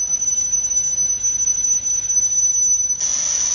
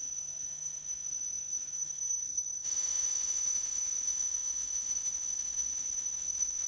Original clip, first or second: first